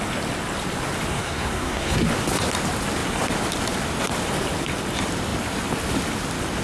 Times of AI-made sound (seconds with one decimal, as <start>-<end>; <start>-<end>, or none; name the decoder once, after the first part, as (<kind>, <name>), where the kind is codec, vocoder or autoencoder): 1.1-2.0 (codec, SNAC)